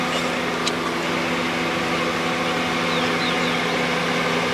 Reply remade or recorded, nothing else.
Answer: recorded